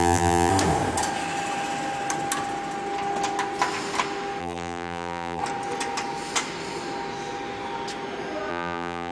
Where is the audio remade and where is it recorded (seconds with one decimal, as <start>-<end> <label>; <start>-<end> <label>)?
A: 0.0-0.5 remade; 0.5-4.4 recorded; 4.4-5.4 remade; 5.4-8.5 recorded; 8.5-9.1 remade